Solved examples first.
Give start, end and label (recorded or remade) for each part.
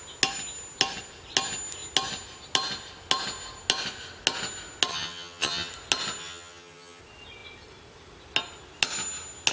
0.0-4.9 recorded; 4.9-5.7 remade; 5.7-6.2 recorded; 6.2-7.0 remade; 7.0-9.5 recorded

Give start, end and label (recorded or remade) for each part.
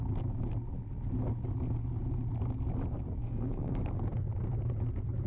0.0-3.2 recorded; 3.2-3.8 remade; 3.8-5.3 recorded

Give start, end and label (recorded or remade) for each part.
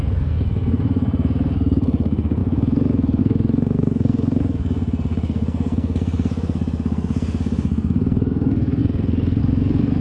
0.0-10.0 remade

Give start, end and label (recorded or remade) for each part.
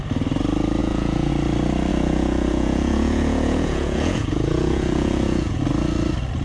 0.0-0.8 recorded; 0.8-1.3 remade; 1.3-1.9 recorded; 1.9-5.6 remade; 5.6-6.4 recorded